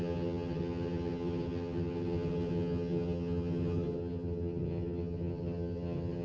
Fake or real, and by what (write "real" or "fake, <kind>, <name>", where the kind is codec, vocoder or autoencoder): fake, vocoder, HiFi-GAN